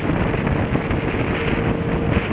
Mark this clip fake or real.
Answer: real